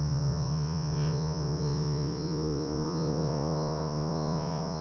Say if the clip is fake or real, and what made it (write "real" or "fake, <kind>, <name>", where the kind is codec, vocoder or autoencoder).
fake, vocoder, Vocos